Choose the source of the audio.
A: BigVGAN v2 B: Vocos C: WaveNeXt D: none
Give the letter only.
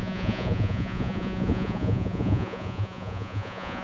B